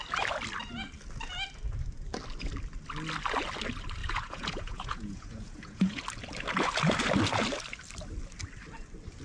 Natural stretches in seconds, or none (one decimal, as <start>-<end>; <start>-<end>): 0.0-4.0; 6.0-9.2